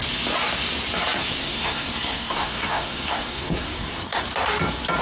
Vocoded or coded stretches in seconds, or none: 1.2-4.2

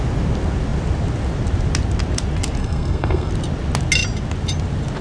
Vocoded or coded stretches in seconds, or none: 2.6-3.3

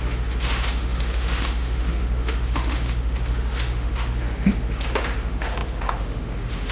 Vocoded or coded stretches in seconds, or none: 0.0-6.7

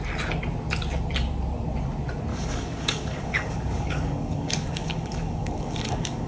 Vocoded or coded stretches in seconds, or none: 2.3-6.3

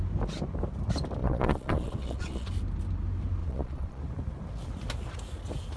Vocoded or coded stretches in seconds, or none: 1.2-2.5; 3.4-4.0

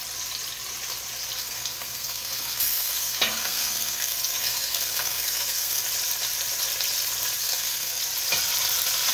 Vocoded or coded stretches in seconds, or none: 1.4-5.8; 7.4-8.0

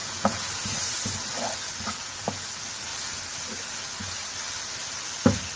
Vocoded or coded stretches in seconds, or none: 0.0-0.5